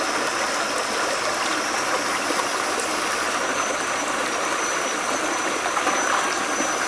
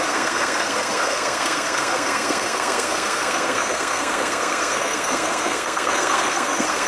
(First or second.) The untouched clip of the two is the first